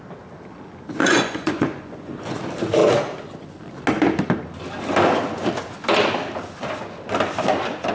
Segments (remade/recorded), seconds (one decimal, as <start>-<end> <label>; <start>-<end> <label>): 0.0-1.0 recorded; 1.0-2.4 remade; 2.4-7.9 recorded